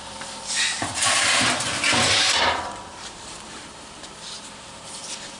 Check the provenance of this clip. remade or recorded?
remade